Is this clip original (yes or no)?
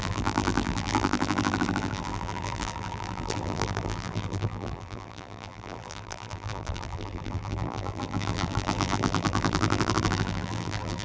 no